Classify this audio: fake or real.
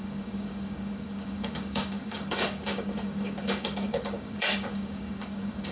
fake